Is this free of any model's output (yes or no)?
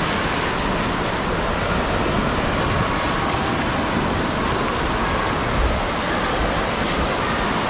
yes